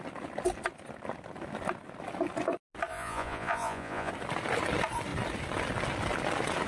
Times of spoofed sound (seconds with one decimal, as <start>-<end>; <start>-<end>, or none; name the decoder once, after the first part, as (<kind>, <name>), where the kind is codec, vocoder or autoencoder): 2.9-4.1 (vocoder, Vocos)